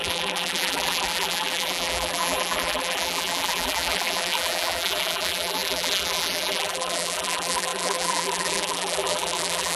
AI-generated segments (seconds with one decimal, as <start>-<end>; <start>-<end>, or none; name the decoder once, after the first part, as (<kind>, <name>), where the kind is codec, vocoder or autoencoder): 0.0-9.8 (vocoder, BigVGAN v2)